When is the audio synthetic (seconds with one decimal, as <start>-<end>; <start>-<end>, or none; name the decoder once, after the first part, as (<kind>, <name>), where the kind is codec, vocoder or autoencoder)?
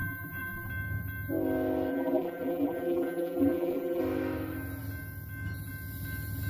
0.0-0.7 (vocoder, BigVGAN v2); 1.9-4.0